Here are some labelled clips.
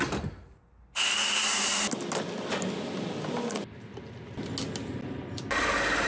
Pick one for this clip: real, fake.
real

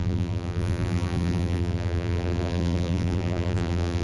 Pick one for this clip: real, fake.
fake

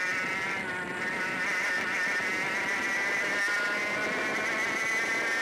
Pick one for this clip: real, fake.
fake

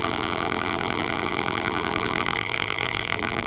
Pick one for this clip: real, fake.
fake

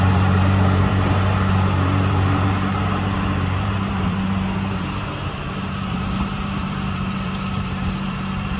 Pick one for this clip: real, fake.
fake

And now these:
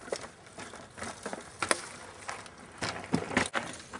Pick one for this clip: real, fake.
real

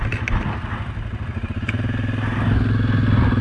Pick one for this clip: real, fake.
real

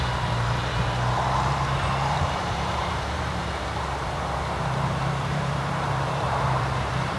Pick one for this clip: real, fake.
fake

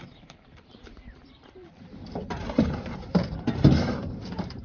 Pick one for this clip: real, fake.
fake